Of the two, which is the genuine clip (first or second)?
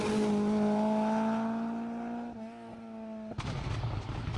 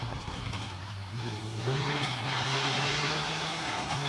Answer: first